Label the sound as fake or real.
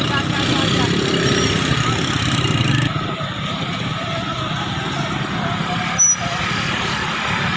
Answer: real